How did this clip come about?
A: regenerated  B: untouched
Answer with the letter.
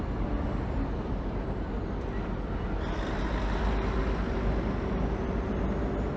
B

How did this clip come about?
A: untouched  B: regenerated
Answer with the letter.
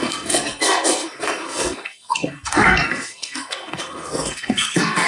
B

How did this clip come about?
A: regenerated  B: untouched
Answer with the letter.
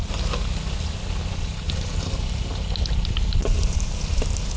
B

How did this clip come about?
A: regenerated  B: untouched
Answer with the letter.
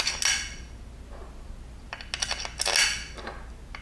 B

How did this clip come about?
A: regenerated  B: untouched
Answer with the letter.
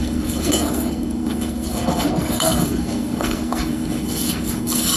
A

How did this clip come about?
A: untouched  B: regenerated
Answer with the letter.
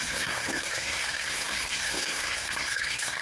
B